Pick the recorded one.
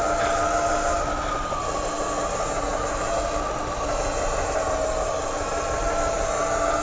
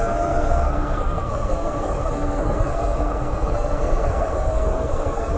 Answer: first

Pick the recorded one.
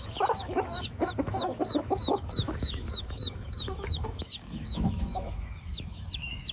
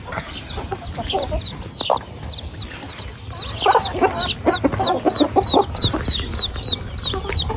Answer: second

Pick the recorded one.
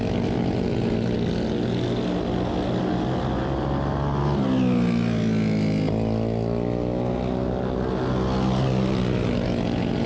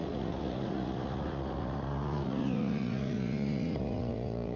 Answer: first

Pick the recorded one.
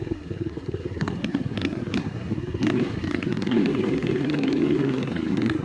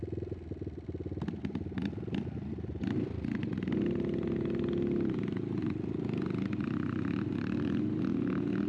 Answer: second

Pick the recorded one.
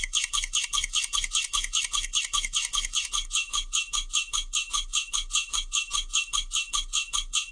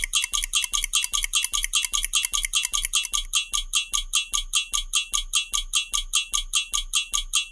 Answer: second